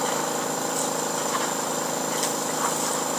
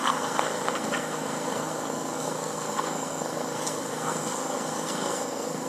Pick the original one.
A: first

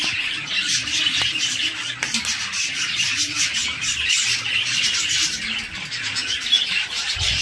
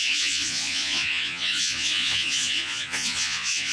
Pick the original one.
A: first